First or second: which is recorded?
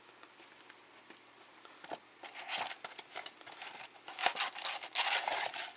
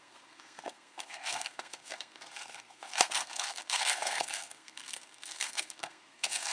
first